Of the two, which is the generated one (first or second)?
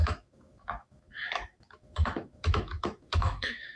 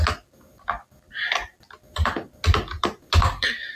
first